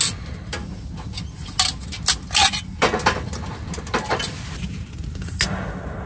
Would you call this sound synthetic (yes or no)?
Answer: no